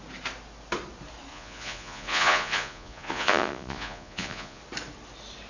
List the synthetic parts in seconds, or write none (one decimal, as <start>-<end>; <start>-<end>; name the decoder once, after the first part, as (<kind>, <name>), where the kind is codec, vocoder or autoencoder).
1.3-4.6 (vocoder, Vocos)